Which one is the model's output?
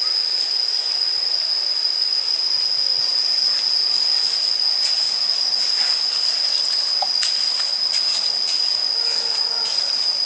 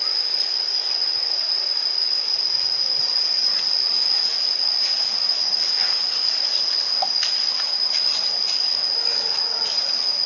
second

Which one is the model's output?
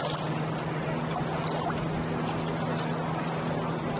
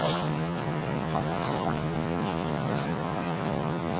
second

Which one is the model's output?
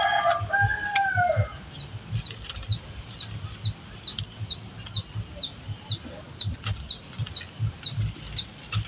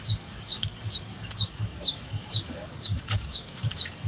second